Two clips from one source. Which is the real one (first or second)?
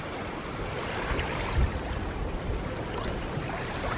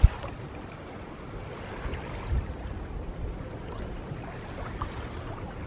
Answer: second